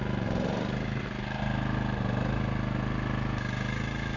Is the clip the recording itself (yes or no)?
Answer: yes